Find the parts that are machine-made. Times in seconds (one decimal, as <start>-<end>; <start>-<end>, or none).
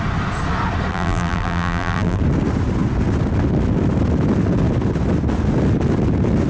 0.9-2.2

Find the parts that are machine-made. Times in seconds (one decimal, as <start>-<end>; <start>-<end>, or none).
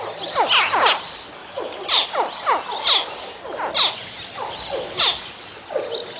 1.4-2.1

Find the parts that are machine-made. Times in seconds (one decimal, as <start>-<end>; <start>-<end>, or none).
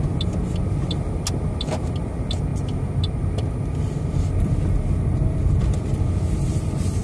none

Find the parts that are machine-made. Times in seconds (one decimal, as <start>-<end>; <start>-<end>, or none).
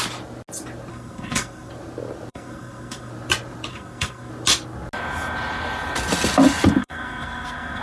0.9-1.7; 2.3-3.1; 3.7-4.3; 6.8-7.8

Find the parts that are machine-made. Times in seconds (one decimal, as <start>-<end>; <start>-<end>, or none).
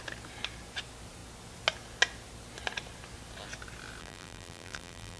4.0-5.2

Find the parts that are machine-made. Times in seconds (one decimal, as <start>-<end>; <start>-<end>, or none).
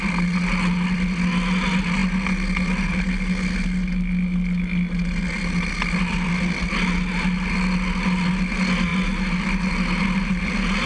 none